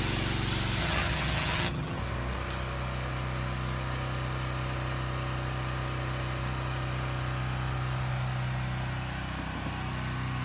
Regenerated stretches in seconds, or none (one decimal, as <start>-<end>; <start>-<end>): 0.8-2.0